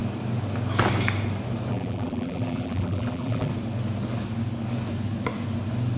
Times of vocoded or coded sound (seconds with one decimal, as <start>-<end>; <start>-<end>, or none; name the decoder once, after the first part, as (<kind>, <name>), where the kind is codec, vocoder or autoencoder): 1.7-3.5 (vocoder, BigVGAN v2)